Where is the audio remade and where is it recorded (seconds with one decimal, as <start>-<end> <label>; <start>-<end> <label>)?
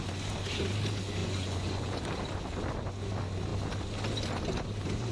0.0-1.2 recorded; 1.2-2.0 remade; 2.0-5.1 recorded